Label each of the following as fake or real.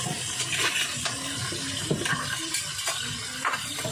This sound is real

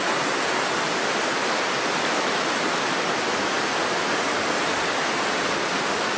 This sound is real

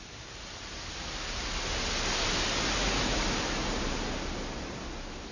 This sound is real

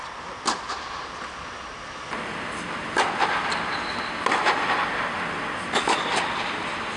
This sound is real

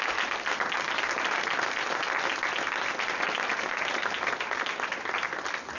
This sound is real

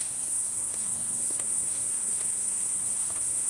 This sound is fake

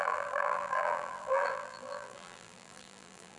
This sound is fake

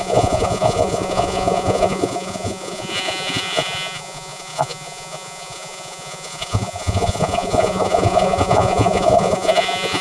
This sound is fake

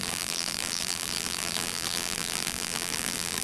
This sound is fake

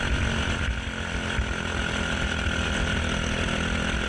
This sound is real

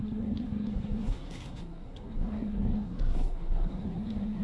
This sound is fake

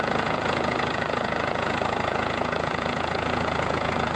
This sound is fake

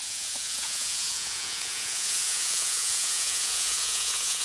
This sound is fake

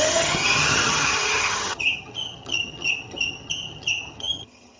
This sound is fake